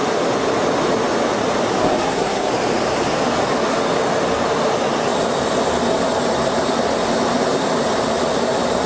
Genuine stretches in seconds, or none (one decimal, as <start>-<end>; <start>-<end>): 0.0-1.8; 2.5-8.9